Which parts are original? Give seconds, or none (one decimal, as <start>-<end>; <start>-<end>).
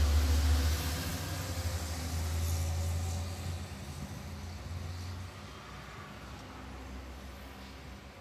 0.0-8.2